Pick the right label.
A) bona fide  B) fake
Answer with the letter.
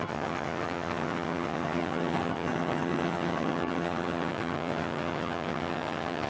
B